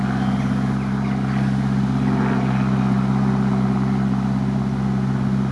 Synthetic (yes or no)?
no